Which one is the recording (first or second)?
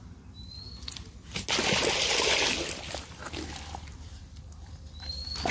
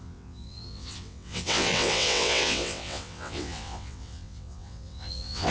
first